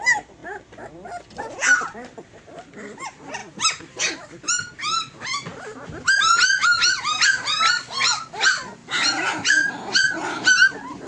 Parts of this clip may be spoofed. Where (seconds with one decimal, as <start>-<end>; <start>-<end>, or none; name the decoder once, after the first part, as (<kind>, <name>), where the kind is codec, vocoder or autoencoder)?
0.0-3.4 (vocoder, BigVGAN v2); 3.9-8.8; 10.1-11.1